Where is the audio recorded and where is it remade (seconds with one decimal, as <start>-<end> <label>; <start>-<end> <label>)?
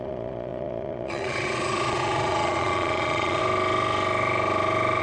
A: 0.0-3.4 remade; 3.4-5.0 recorded